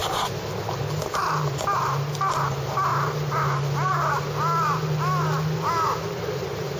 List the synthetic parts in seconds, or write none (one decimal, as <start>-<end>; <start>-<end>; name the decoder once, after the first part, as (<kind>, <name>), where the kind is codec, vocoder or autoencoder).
none